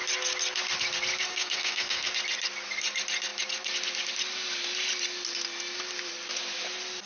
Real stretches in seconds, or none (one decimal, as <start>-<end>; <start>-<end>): 0.0-1.3; 2.1-7.1